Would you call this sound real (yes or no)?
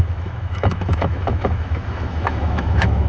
no